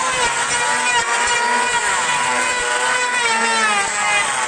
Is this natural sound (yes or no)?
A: yes